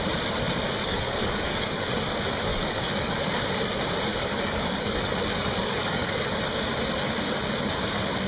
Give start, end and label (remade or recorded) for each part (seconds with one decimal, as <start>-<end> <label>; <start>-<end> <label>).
0.0-0.8 recorded; 0.8-1.9 remade; 1.9-2.5 recorded; 2.5-3.4 remade; 3.4-4.1 recorded; 4.1-6.4 remade; 6.4-8.3 recorded